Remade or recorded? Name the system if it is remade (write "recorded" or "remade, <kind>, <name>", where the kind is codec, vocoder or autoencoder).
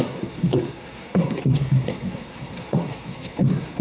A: remade, codec, SNAC